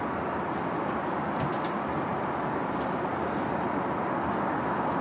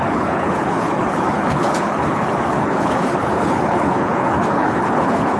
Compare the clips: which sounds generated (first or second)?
second